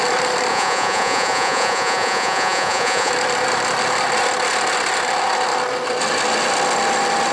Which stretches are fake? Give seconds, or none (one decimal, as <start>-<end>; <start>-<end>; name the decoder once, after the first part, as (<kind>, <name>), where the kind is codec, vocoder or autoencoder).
0.5-3.1 (vocoder, Vocos)